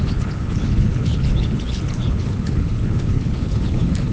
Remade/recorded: remade